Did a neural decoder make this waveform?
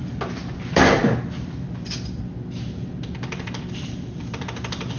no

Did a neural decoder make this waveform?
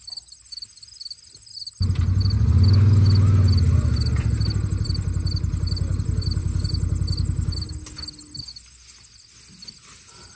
no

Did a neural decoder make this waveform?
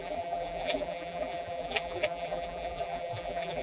yes